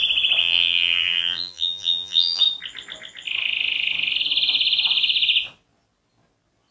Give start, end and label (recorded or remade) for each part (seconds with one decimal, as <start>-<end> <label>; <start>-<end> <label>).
0.0-0.4 recorded; 0.4-2.4 remade; 2.4-6.7 recorded